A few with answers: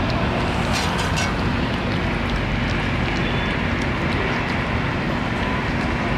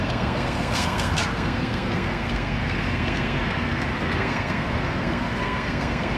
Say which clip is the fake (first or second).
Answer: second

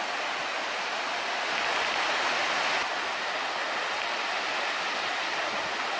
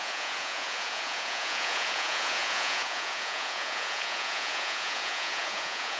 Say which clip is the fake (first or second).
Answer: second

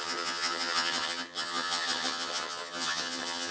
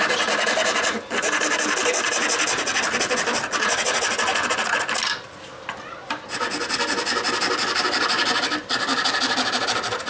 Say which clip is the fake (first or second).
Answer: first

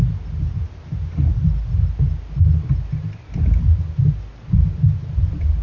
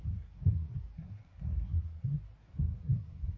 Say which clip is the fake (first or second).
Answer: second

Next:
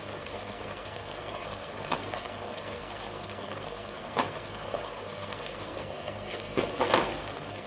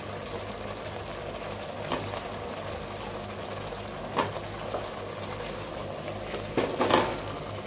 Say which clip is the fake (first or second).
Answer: first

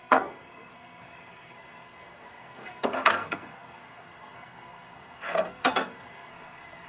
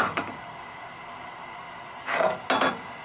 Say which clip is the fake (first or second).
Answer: first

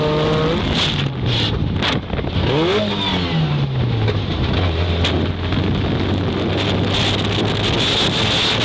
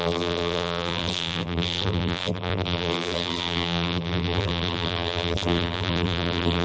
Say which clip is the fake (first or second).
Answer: second